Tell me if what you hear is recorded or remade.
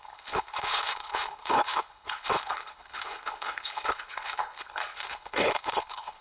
remade